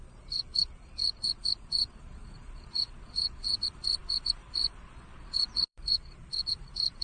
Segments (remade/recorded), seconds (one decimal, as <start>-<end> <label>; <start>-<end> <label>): 0.0-7.0 remade

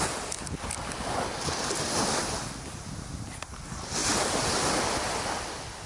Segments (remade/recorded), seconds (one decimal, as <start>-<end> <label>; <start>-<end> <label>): 0.0-5.9 recorded

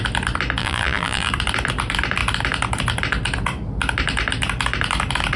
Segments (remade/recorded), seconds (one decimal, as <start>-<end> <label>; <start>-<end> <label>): 0.0-0.6 recorded; 0.6-1.3 remade; 1.3-5.4 recorded

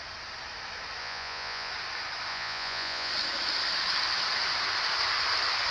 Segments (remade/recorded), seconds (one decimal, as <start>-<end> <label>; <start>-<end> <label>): 0.0-1.0 recorded; 1.0-1.7 remade; 1.7-2.3 recorded; 2.3-3.1 remade; 3.1-5.7 recorded

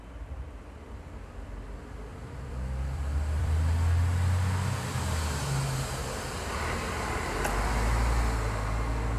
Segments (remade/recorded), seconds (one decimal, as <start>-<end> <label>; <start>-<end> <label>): 0.0-2.1 recorded; 2.1-3.6 remade; 3.6-9.2 recorded

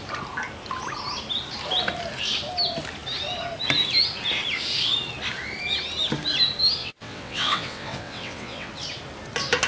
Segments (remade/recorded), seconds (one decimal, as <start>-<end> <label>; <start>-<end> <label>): 0.0-6.8 recorded; 6.8-8.7 remade; 8.7-9.7 recorded